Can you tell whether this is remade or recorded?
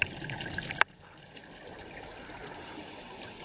recorded